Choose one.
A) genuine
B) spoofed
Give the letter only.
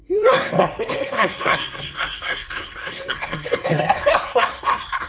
B